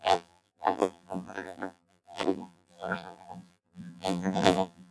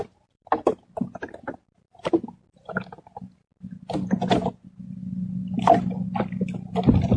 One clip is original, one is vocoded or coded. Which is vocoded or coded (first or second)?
first